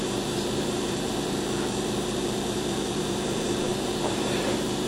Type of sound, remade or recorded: remade